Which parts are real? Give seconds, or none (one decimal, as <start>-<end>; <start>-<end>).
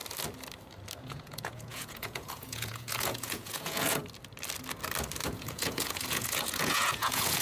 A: 0.0-1.0; 4.0-5.3